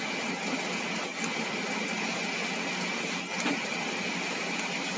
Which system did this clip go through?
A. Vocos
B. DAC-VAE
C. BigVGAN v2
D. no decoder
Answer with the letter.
D